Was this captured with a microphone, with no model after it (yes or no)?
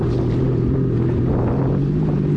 yes